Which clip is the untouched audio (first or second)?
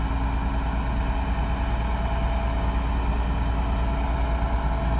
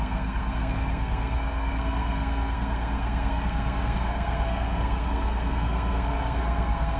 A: first